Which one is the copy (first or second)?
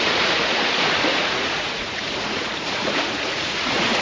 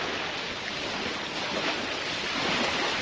first